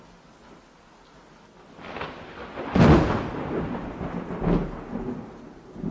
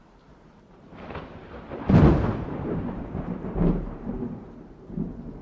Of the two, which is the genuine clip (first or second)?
first